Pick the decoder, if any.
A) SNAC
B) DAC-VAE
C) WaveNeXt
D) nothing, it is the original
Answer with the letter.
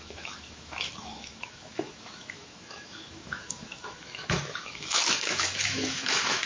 B